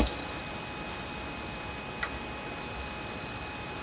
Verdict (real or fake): real